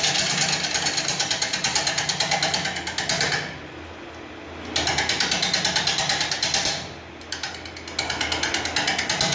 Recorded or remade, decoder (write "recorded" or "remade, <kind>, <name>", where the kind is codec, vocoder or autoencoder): recorded